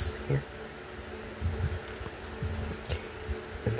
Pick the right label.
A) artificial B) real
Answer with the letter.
B